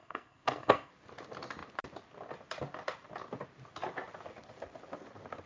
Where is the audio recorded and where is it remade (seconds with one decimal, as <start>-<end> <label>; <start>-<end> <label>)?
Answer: 0.0-0.9 remade; 0.9-5.5 recorded

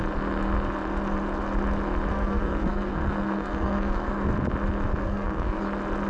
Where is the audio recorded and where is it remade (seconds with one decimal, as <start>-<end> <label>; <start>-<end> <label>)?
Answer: 0.0-2.1 recorded; 2.1-4.3 remade; 4.3-5.0 recorded; 5.0-5.6 remade; 5.6-6.1 recorded

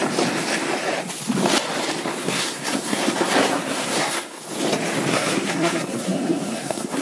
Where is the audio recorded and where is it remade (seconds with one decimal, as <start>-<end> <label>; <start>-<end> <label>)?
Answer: 0.0-2.2 recorded; 2.2-4.4 remade; 4.4-5.1 recorded; 5.1-7.0 remade

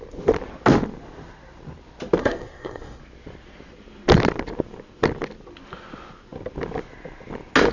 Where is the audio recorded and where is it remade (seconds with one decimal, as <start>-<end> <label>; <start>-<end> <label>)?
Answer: 0.0-2.2 recorded; 2.2-3.0 remade; 3.0-7.7 recorded

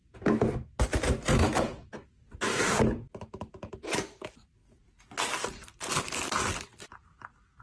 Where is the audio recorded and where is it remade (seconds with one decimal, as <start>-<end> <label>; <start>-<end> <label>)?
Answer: 0.0-7.6 recorded

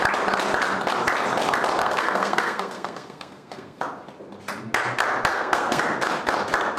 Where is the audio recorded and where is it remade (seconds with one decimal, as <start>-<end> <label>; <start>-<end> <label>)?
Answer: 0.0-1.8 recorded; 1.8-3.8 remade; 3.8-5.3 recorded; 5.3-5.8 remade; 5.8-6.8 recorded

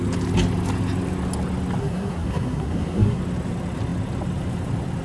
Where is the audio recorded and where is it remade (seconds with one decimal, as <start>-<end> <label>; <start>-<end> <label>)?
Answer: 0.0-1.8 recorded; 1.8-3.2 remade; 3.2-5.0 recorded

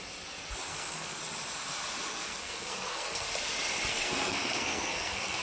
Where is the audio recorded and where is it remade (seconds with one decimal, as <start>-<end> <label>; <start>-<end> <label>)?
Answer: 0.0-0.7 recorded; 0.7-1.2 remade; 1.2-2.1 recorded; 2.1-3.3 remade; 3.3-3.9 recorded; 3.9-5.4 remade